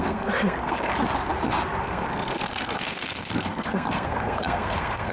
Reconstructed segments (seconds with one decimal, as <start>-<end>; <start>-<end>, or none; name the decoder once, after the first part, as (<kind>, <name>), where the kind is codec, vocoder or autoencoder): 0.0-0.9 (codec, SNAC); 1.8-5.1